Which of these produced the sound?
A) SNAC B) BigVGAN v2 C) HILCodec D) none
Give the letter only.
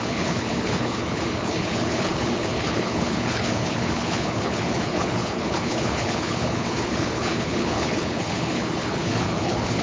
C